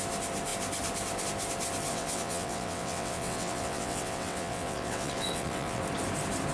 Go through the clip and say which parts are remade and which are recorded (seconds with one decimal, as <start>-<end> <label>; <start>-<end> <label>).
0.0-1.9 recorded; 1.9-5.8 remade; 5.8-6.5 recorded